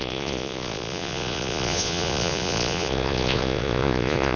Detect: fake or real fake